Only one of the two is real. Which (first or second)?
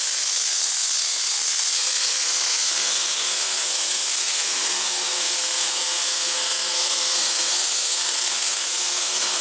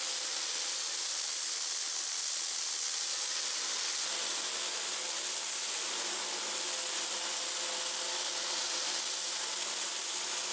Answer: second